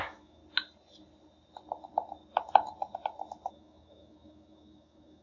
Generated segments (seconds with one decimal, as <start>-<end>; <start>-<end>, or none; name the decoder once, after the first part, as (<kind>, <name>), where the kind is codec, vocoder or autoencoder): 0.0-0.4 (autoencoder, DAC-VAE); 3.5-5.2